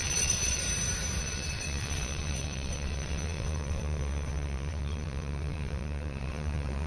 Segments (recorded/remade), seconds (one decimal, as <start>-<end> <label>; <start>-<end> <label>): 0.0-0.6 remade; 0.6-1.2 recorded; 1.2-6.9 remade